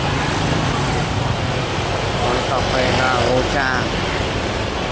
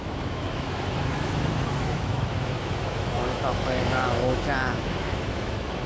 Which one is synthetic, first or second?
second